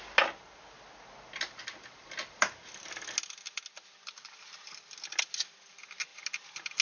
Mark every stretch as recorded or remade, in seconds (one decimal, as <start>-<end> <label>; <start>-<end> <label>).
0.0-6.8 recorded